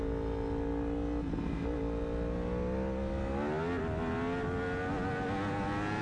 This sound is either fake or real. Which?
real